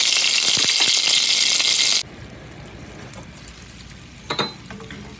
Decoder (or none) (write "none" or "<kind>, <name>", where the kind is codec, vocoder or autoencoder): none